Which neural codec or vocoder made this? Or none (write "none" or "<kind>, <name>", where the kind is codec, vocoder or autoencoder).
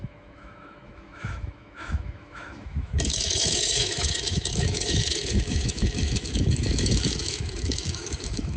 autoencoder, DAC-VAE